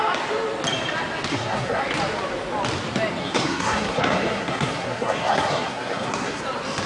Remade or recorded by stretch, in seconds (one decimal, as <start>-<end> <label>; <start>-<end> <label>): 0.0-1.3 recorded; 1.3-1.8 remade; 1.8-3.2 recorded; 3.2-6.4 remade; 6.4-6.9 recorded

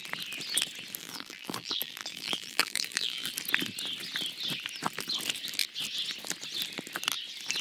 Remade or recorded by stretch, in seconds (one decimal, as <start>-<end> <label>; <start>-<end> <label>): 0.0-1.0 recorded; 1.0-3.3 remade; 3.3-7.6 recorded

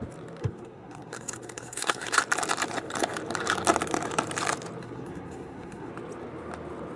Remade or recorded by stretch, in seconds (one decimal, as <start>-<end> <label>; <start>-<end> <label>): 0.0-0.4 recorded; 0.4-2.2 remade; 2.2-4.8 recorded; 4.8-5.9 remade; 5.9-7.0 recorded

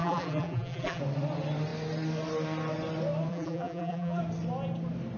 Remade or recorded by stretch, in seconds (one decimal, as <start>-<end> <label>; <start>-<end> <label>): 0.0-1.0 remade; 1.0-3.3 recorded; 3.3-4.2 remade; 4.2-5.2 recorded

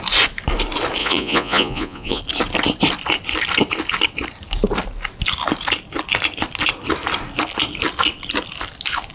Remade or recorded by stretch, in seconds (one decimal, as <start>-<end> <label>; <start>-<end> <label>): 0.0-1.0 recorded; 1.0-2.2 remade; 2.2-9.1 recorded

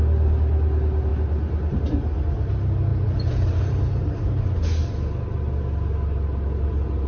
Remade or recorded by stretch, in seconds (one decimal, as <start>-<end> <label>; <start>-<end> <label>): 0.0-2.9 recorded; 2.9-4.2 remade; 4.2-7.1 recorded

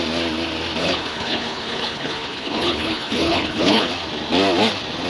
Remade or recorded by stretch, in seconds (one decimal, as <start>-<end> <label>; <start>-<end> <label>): 0.0-0.8 recorded; 0.8-3.9 remade; 3.9-5.1 recorded

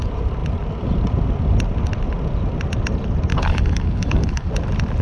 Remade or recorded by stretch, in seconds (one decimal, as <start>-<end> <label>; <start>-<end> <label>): 0.0-3.3 recorded; 3.3-4.5 remade; 4.5-5.0 recorded